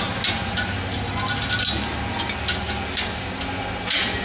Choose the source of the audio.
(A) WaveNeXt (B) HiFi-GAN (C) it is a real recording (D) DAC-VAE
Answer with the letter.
C